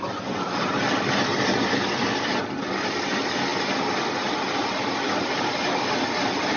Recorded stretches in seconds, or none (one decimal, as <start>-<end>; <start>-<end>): 0.0-6.6